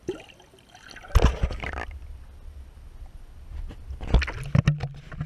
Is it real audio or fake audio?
real